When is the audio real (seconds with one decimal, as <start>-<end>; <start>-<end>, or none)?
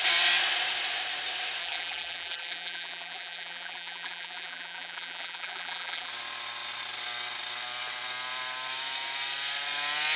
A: 0.0-1.6; 6.1-10.2